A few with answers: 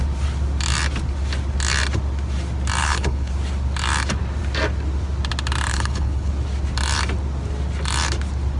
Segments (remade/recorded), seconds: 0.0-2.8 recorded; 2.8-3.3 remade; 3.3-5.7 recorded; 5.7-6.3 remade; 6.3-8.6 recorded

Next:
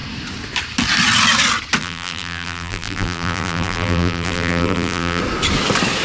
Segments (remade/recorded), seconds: 0.0-1.8 recorded; 1.8-5.2 remade; 5.2-6.0 recorded

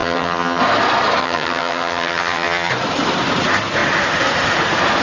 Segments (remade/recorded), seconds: 0.0-0.6 remade; 0.6-1.2 recorded; 1.2-2.7 remade; 2.7-5.0 recorded

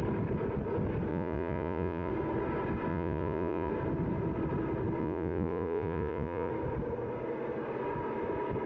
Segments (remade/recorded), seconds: 0.0-1.1 recorded; 1.1-2.1 remade; 2.1-2.9 recorded; 2.9-3.7 remade; 3.7-5.0 recorded; 5.0-6.5 remade; 6.5-8.7 recorded

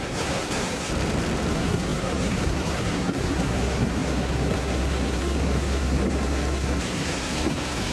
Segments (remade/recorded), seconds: 0.0-0.9 remade; 0.9-1.5 recorded; 1.5-7.9 remade

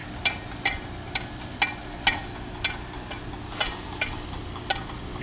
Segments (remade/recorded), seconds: 0.0-5.2 recorded

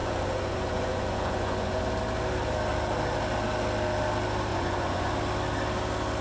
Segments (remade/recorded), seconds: 0.0-1.8 remade; 1.8-4.5 recorded; 4.5-5.1 remade; 5.1-6.2 recorded

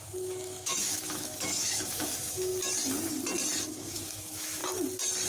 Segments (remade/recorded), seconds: 0.0-2.5 remade; 2.5-3.6 recorded; 3.6-4.6 remade; 4.6-5.3 recorded